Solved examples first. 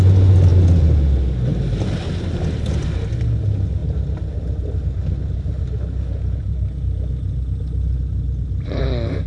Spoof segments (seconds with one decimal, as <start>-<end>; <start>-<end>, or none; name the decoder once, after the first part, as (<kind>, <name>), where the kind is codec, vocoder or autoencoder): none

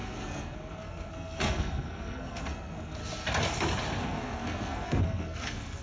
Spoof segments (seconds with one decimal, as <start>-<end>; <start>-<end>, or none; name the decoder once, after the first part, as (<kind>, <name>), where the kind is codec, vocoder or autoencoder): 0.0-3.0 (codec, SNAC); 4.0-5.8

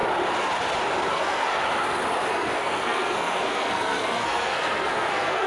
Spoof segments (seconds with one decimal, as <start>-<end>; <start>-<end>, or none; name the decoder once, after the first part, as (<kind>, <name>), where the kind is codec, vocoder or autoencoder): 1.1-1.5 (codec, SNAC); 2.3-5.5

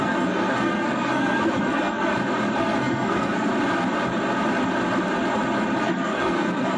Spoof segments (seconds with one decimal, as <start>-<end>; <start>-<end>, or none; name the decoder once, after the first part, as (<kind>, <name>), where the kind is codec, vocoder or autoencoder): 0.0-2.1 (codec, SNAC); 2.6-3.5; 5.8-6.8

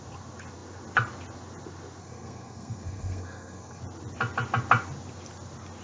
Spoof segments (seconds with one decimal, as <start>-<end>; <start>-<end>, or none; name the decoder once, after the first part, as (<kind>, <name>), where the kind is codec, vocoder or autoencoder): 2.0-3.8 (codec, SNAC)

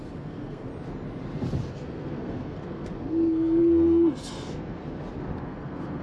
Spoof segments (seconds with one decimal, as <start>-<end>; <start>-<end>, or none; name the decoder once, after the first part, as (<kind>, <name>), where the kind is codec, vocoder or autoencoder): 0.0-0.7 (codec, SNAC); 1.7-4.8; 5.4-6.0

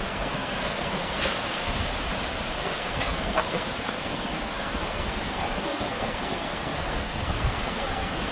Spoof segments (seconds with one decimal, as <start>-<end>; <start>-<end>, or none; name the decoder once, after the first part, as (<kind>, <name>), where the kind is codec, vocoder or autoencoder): 0.0-1.9 (codec, SNAC); 2.5-8.3